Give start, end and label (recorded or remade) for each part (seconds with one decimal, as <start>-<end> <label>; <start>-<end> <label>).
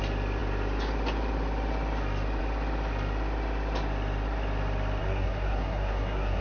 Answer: 0.0-5.0 recorded; 5.0-6.4 remade